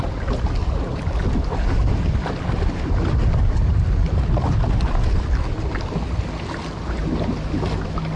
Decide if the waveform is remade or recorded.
recorded